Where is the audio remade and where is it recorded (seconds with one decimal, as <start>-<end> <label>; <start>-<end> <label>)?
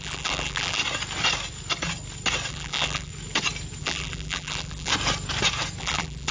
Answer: 0.0-0.8 remade; 0.8-2.5 recorded; 2.5-3.1 remade; 3.1-3.8 recorded; 3.8-4.9 remade; 4.9-5.8 recorded; 5.8-6.3 remade